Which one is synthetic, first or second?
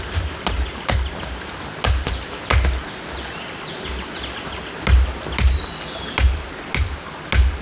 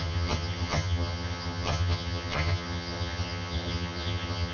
second